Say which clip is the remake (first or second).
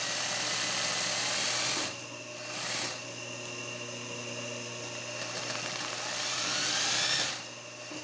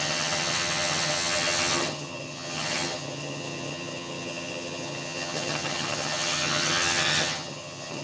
second